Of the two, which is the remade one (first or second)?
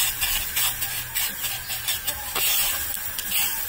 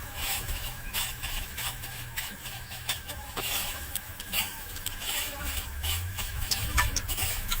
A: second